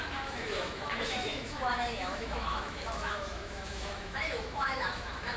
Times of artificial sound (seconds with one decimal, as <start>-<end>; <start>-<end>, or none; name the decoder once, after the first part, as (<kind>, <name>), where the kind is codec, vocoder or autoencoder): 0.0-5.4 (autoencoder, DAC-VAE)